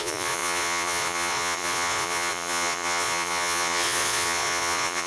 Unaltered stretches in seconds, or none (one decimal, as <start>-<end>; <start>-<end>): none